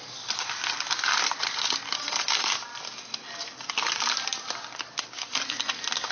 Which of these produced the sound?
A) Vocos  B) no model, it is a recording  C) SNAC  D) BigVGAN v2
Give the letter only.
D